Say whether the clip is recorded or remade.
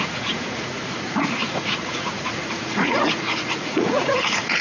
remade